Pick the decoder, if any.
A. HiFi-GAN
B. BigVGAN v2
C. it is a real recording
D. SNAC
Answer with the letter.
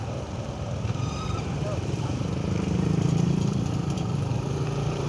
B